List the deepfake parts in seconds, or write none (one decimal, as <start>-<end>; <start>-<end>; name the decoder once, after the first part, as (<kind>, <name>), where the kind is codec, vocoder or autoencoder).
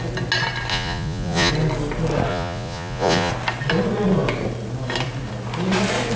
0.7-1.5 (vocoder, Vocos); 2.3-3.3